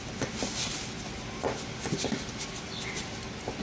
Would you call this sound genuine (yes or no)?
yes